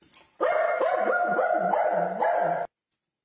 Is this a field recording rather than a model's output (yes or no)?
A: yes